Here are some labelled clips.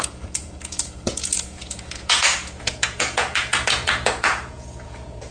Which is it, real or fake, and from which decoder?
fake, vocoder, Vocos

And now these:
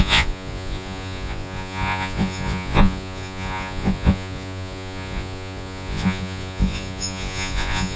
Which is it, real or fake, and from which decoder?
fake, vocoder, Vocos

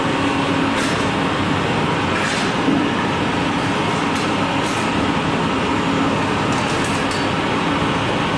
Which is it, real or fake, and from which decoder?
real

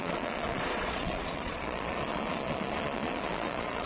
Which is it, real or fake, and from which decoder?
fake, vocoder, Vocos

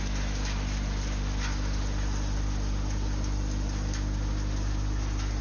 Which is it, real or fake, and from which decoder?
real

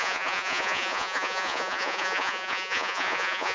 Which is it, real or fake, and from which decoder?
fake, vocoder, Vocos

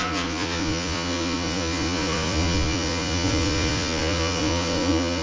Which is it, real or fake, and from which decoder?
fake, vocoder, Vocos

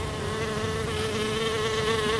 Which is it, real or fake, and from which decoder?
real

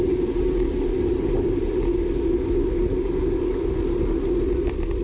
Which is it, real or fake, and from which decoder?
real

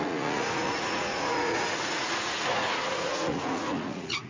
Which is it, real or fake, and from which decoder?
fake, vocoder, Vocos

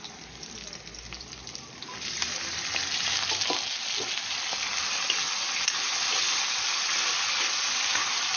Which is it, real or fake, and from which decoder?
real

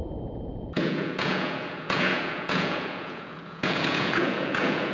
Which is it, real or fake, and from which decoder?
fake, vocoder, Vocos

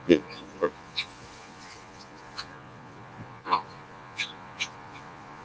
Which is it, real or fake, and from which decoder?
fake, vocoder, Vocos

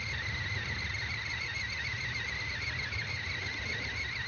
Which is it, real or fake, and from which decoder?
real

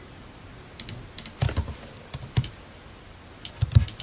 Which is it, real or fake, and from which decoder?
real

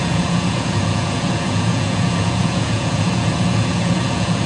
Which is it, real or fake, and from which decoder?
fake, vocoder, Vocos